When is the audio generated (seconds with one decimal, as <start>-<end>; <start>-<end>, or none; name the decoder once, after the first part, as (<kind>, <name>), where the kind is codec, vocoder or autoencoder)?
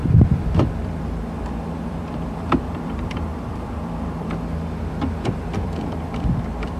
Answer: 0.0-6.8 (vocoder, BigVGAN v2)